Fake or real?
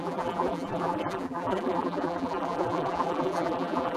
fake